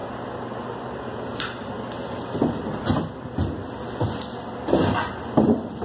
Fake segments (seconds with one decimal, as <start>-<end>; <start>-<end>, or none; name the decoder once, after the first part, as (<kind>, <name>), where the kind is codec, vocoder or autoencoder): 3.4-5.8 (vocoder, BigVGAN v2)